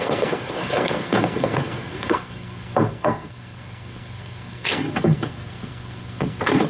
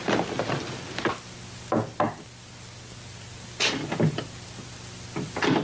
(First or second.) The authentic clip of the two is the second